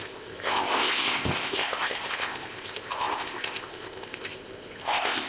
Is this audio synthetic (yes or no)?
yes